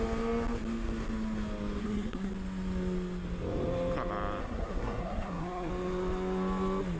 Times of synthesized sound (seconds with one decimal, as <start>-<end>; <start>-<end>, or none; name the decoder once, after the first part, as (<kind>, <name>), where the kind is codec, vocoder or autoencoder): 1.8-2.3 (codec, SNAC); 4.4-5.7